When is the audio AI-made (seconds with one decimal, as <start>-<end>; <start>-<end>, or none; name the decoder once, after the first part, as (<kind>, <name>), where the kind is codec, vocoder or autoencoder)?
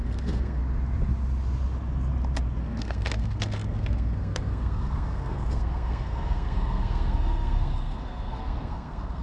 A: 0.0-0.6 (codec, SNAC); 2.6-9.2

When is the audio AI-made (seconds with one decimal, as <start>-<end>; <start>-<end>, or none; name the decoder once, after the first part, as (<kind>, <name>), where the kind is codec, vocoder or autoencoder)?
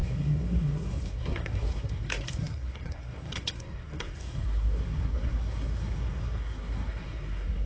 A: 0.0-7.7 (codec, SNAC)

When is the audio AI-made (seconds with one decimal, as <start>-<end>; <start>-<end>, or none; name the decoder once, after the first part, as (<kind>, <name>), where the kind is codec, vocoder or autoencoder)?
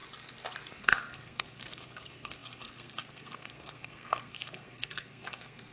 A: 0.8-5.7 (codec, SNAC)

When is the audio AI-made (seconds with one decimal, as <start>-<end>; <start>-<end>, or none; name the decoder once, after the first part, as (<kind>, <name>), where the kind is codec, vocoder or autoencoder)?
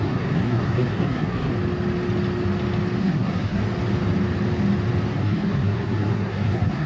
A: 0.0-1.5 (codec, SNAC); 3.0-3.6; 5.1-6.9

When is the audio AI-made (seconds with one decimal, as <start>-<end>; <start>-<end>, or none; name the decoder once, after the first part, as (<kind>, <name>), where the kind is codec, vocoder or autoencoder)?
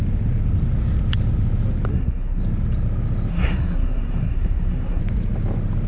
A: 1.9-2.4 (codec, SNAC); 3.3-5.0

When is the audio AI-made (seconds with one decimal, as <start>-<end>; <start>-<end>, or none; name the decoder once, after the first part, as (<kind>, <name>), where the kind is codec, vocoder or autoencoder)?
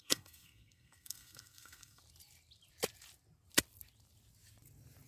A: 0.0-2.0 (codec, SNAC)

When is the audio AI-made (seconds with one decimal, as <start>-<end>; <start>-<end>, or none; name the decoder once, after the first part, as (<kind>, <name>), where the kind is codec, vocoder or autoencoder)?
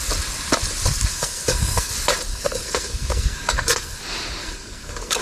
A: 1.1-1.9 (codec, SNAC); 2.3-4.0; 4.4-5.2